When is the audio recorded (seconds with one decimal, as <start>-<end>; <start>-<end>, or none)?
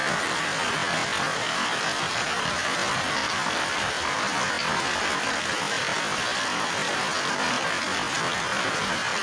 0.0-3.2; 3.8-6.3; 6.9-9.2